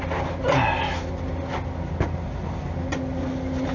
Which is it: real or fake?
real